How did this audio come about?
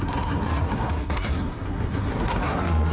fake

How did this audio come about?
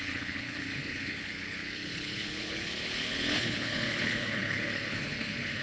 fake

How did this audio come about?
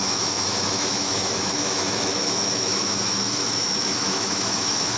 fake